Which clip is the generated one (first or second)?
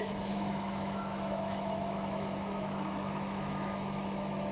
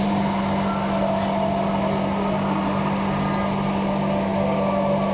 first